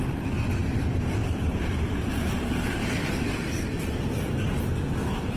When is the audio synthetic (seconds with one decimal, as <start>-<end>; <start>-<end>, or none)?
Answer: 0.6-3.8